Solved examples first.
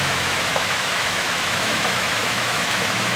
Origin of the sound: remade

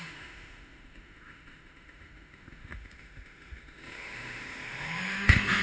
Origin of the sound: remade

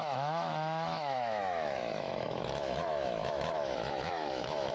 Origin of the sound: remade